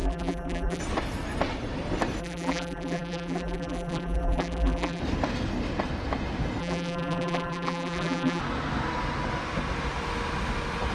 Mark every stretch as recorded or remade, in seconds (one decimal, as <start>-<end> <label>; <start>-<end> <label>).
0.0-0.8 remade; 0.8-2.2 recorded; 2.2-5.0 remade; 5.0-6.6 recorded; 6.6-8.4 remade; 8.4-10.9 recorded

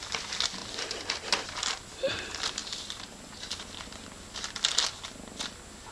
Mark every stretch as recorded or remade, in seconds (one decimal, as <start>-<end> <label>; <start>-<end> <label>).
0.0-0.6 recorded; 0.6-1.6 remade; 1.6-5.9 recorded

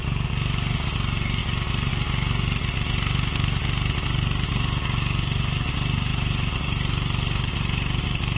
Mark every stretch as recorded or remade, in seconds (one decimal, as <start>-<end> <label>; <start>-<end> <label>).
0.0-1.4 recorded; 1.4-1.9 remade; 1.9-6.1 recorded; 6.1-8.4 remade

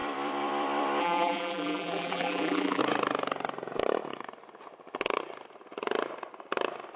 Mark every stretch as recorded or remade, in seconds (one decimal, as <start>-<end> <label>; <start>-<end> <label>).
0.0-1.0 recorded; 1.0-2.8 remade; 2.8-7.0 recorded

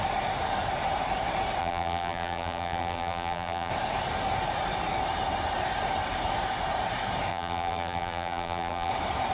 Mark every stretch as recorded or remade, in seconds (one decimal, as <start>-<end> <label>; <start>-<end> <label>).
0.0-1.6 recorded; 1.6-3.7 remade; 3.7-7.3 recorded; 7.3-8.9 remade; 8.9-9.3 recorded

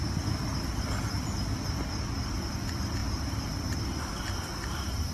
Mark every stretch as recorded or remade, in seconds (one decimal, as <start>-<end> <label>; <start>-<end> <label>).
0.0-3.0 recorded; 3.0-4.5 remade; 4.5-5.1 recorded